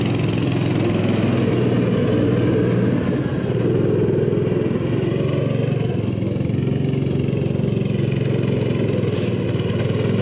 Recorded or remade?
recorded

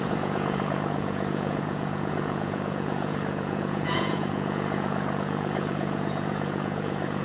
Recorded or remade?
remade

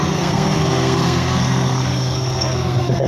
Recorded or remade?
remade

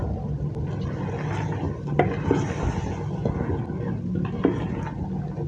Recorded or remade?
recorded